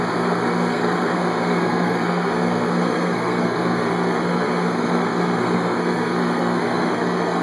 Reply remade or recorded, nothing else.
remade